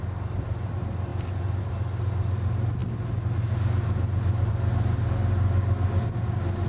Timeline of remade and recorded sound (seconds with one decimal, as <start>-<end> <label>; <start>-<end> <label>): 0.0-6.7 recorded